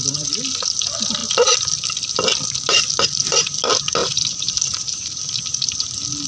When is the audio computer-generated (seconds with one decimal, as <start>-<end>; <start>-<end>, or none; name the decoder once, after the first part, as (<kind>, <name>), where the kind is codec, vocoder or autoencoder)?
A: 4.0-5.2 (vocoder, BigVGAN v2)